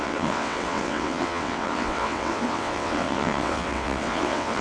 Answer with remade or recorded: remade